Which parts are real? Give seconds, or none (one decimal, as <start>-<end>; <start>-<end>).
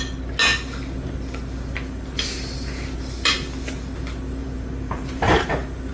0.0-4.4; 5.5-5.9